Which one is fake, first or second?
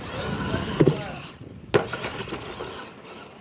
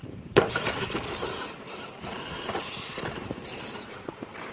second